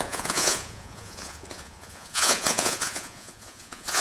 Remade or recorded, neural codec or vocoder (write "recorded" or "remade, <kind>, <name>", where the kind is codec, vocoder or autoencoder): remade, vocoder, Vocos